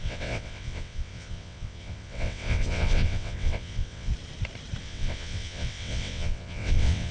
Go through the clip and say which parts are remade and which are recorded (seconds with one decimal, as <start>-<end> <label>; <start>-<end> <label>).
0.0-4.1 remade; 4.1-4.8 recorded; 4.8-7.1 remade